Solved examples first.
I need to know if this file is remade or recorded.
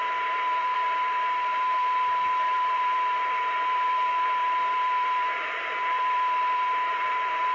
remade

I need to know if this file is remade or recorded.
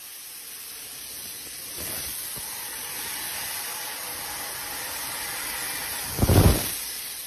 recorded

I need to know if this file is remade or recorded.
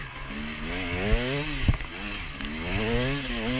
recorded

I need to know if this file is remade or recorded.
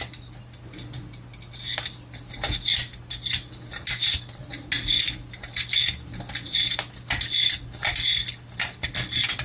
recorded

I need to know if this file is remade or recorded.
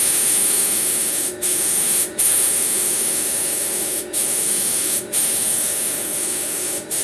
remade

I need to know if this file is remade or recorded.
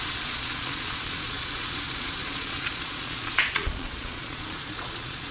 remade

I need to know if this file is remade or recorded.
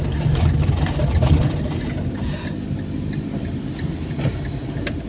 recorded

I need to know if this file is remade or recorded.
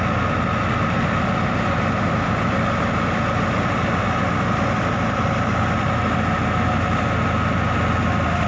recorded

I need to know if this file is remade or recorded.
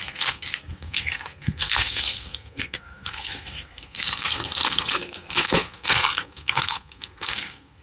remade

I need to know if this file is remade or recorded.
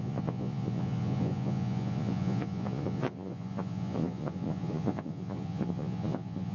remade